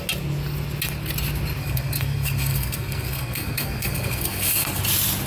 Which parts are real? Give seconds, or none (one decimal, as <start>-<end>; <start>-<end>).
0.0-1.6; 4.8-5.3